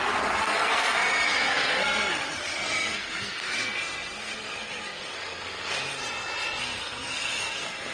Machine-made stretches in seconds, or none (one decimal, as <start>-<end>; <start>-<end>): 0.0-6.0; 6.6-7.9